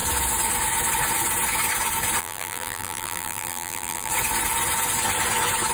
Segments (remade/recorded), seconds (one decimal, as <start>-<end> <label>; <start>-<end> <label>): 0.0-2.2 recorded; 2.2-4.1 remade; 4.1-5.7 recorded